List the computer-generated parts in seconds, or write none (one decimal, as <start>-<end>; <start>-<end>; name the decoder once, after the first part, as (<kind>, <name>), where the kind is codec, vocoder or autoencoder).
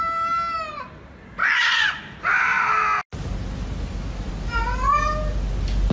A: 1.4-2.0 (vocoder, Vocos)